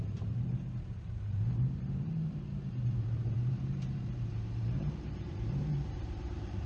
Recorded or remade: remade